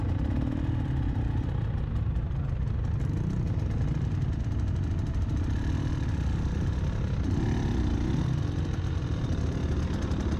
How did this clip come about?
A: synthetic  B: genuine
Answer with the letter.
B